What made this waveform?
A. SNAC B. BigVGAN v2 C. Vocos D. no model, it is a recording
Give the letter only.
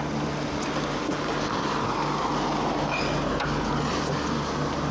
D